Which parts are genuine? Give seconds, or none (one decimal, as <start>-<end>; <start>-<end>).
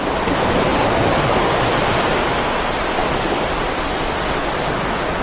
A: 0.0-5.2